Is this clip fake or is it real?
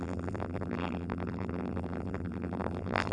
fake